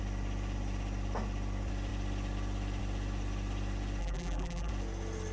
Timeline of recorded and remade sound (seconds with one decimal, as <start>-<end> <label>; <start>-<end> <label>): 0.0-4.0 recorded; 4.0-4.7 remade; 4.7-5.3 recorded